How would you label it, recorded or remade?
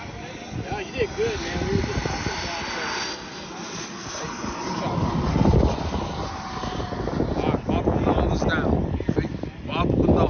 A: recorded